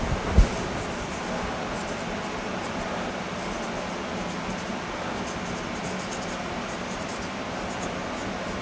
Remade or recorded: recorded